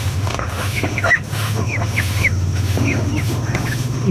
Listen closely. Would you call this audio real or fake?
fake